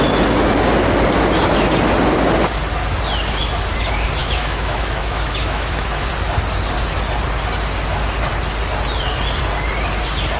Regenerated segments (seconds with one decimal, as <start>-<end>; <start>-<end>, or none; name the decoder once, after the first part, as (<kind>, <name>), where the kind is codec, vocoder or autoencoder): 4.2-6.1 (autoencoder, DAC-VAE)